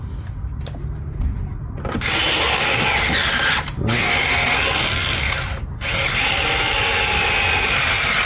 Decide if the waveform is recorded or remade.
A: recorded